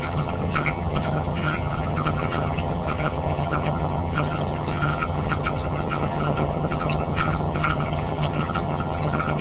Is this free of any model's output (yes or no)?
no